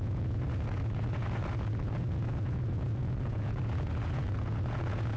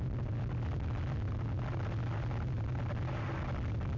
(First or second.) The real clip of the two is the second